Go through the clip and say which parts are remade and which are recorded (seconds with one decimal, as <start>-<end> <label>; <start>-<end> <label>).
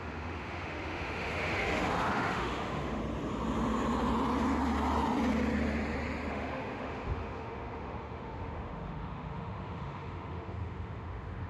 0.0-3.0 remade; 3.0-6.3 recorded; 6.3-11.5 remade